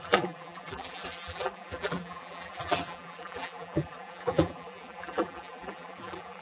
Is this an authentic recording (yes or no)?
no